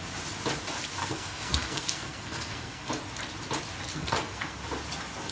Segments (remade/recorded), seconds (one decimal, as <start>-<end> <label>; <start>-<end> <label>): 0.0-1.0 recorded; 1.0-2.9 remade; 2.9-3.9 recorded; 3.9-4.6 remade; 4.6-5.3 recorded